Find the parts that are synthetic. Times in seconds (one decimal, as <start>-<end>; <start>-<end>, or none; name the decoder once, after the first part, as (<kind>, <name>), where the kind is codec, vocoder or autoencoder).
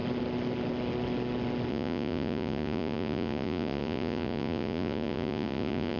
1.7-6.0 (vocoder, Vocos)